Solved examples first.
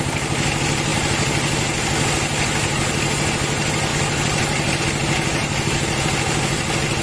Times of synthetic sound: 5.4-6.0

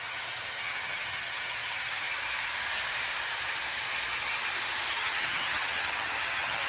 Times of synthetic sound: 0.0-2.1; 4.9-6.7

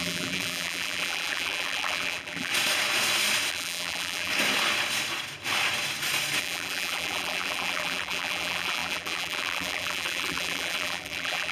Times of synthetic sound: 0.0-2.5; 3.5-4.3; 6.4-11.5

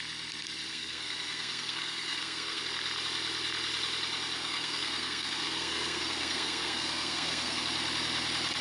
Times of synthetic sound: 0.7-2.6; 4.4-7.6

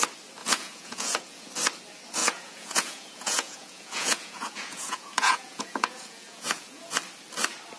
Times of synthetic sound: 0.4-1.5; 2.2-6.9

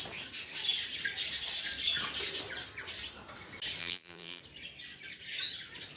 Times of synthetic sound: 3.8-4.4

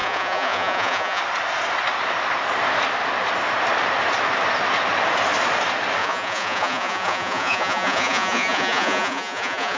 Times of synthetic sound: 0.0-1.2; 6.0-9.8